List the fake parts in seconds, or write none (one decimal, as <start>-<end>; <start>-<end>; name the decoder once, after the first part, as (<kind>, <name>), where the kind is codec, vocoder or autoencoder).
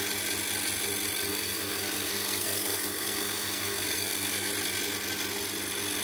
1.3-4.5 (codec, SNAC)